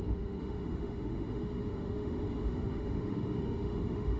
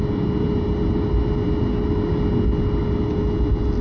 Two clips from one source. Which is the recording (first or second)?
second